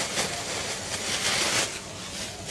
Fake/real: real